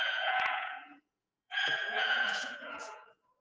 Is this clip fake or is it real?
fake